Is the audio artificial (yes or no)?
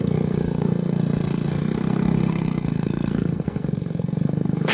yes